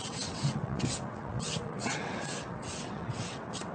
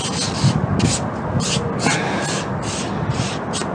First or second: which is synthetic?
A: first